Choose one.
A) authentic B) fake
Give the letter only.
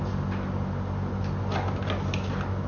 A